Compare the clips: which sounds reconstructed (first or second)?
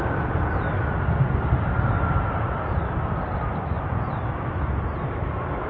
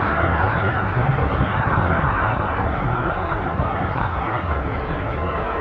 second